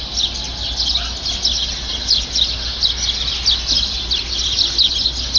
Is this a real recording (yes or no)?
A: yes